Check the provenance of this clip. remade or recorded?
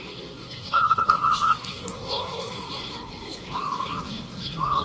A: remade